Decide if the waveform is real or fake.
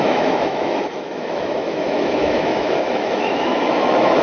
fake